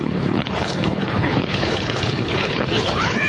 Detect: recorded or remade remade